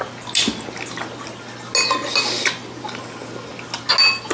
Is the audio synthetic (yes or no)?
no